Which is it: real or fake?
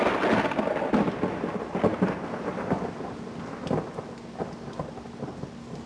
real